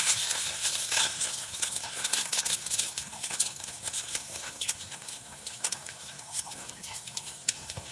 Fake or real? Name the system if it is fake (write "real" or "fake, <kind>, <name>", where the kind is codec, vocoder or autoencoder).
fake, codec, SNAC